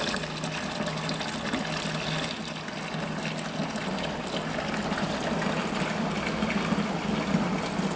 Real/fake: real